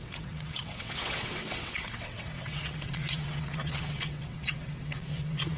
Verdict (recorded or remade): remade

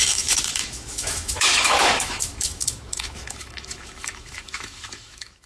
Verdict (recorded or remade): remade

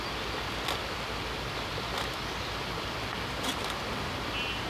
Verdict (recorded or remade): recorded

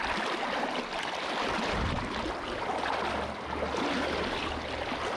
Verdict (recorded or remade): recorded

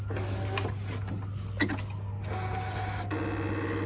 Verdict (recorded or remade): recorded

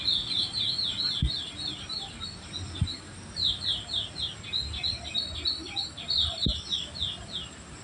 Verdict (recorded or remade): recorded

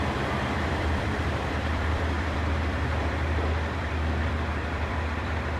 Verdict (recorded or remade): remade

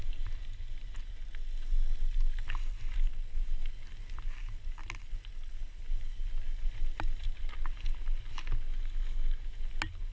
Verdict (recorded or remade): recorded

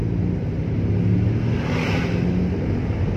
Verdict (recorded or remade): recorded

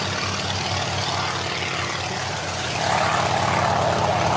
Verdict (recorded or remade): recorded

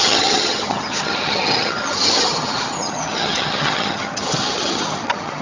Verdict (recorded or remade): remade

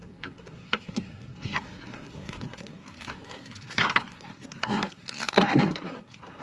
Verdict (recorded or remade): remade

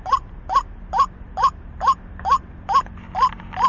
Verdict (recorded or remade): recorded